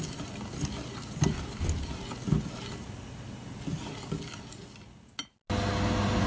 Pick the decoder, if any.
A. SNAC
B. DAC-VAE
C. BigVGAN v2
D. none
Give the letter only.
D